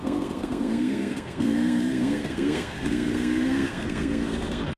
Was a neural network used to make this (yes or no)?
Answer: yes